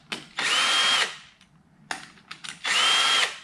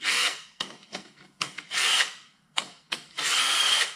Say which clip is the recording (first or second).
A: first